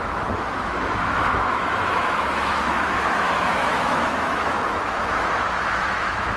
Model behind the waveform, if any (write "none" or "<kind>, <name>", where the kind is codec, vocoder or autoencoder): autoencoder, DAC-VAE